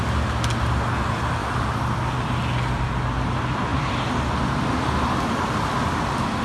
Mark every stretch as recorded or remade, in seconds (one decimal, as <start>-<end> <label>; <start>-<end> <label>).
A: 0.0-1.4 recorded; 1.4-3.0 remade; 3.0-6.4 recorded

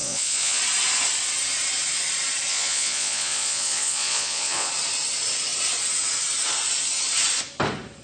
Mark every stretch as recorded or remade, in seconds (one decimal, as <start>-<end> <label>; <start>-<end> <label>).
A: 0.0-0.6 remade; 0.6-2.5 recorded; 2.5-4.7 remade; 4.7-8.0 recorded

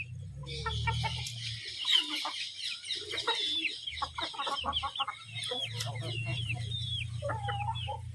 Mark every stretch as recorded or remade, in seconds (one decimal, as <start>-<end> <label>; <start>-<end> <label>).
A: 0.0-6.3 recorded; 6.3-7.3 remade; 7.3-8.1 recorded

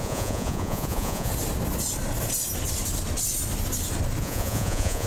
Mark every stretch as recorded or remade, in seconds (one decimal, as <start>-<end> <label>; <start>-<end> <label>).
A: 0.0-1.3 remade; 1.3-4.2 recorded; 4.2-5.1 remade